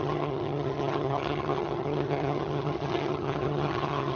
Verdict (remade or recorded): remade